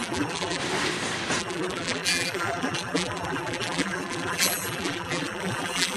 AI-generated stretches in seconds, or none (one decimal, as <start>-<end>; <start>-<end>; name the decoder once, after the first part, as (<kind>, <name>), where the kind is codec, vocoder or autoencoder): 0.0-0.6 (vocoder, BigVGAN v2); 1.4-6.0